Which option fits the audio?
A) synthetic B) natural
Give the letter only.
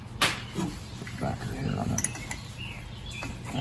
B